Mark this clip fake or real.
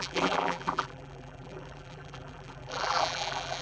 fake